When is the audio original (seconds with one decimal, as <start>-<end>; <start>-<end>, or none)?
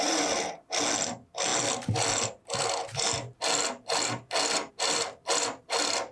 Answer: 0.0-6.1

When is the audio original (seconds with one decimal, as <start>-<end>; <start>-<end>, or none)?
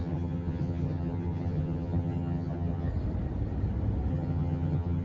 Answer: 2.9-4.1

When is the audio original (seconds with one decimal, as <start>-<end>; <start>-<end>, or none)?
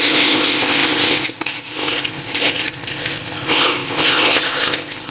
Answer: none